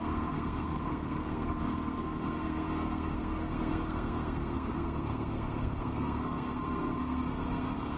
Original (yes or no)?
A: no